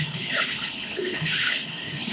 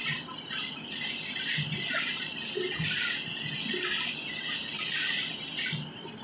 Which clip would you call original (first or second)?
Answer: second